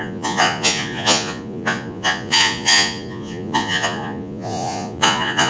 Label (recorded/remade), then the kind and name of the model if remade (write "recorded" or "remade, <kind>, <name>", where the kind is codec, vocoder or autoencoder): remade, vocoder, Vocos